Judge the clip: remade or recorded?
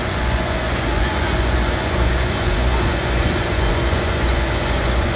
remade